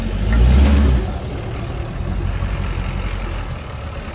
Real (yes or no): yes